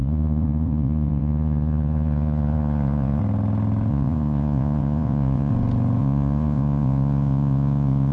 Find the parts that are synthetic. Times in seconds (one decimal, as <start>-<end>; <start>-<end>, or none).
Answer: 0.0-3.2; 3.9-5.5; 6.0-8.1